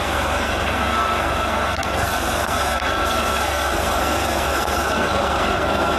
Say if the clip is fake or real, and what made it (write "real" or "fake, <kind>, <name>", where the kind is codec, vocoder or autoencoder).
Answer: fake, codec, SNAC